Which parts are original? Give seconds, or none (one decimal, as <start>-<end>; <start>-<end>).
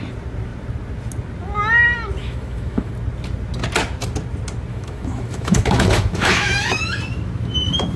0.0-2.2; 2.9-4.7; 7.0-8.0